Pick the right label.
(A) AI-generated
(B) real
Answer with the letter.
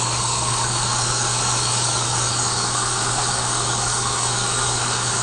A